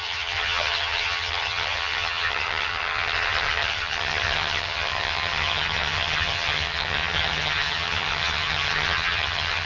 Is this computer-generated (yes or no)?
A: yes